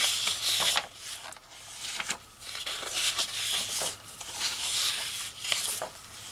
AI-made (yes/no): no